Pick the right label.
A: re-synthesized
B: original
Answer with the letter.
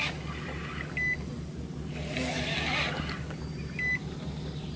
B